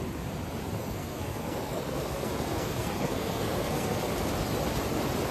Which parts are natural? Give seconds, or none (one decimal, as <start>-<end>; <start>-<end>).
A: 0.0-0.8; 4.0-5.3